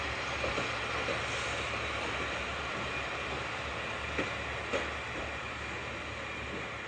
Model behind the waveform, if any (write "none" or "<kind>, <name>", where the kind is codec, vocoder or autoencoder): none